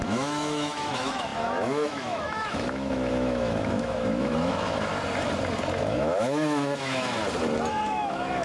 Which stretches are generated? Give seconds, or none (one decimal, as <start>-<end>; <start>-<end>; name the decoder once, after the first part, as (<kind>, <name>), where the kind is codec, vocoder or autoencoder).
0.0-4.9 (autoencoder, DAC-VAE); 5.8-7.2; 7.7-8.4